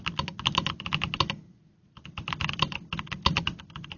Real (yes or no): yes